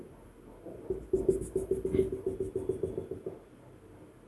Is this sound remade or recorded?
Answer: recorded